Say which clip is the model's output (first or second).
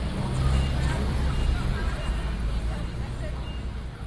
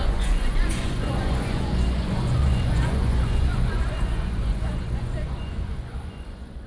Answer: second